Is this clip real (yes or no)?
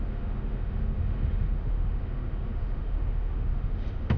no